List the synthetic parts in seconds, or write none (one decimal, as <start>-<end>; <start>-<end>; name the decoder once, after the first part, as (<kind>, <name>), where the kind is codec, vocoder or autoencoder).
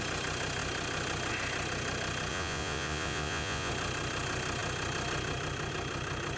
2.3-3.7 (vocoder, Vocos)